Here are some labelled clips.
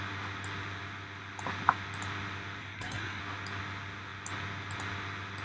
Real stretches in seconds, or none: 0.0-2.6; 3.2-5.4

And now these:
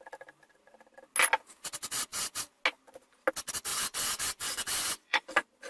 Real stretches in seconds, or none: 0.0-3.7; 5.3-5.7

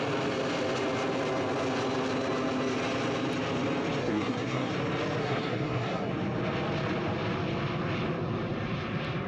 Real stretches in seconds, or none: 0.0-4.0; 4.7-5.2; 6.1-9.3

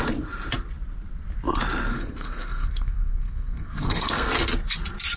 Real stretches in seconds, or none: 0.0-1.9; 4.3-5.2

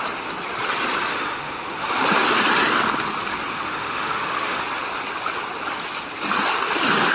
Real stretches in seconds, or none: 0.0-1.1; 1.9-3.5; 4.6-7.1